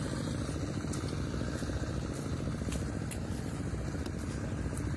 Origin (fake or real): real